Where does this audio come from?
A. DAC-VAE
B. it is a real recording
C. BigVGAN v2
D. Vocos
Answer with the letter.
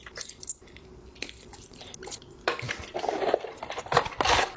B